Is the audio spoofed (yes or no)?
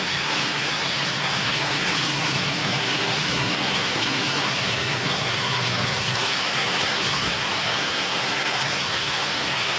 yes